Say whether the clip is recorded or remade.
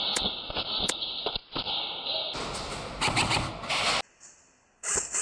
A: recorded